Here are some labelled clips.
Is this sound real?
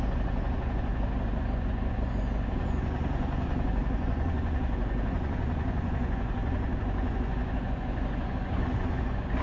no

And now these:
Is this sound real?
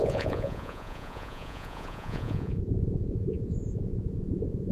no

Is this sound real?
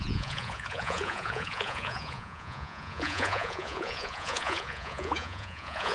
no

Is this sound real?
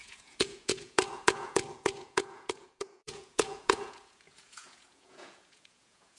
no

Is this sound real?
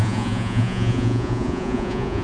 no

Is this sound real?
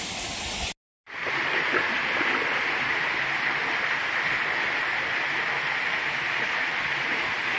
yes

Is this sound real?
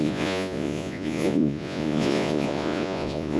no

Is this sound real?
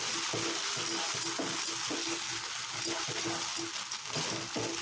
yes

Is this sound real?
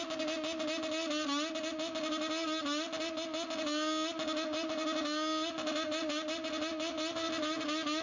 yes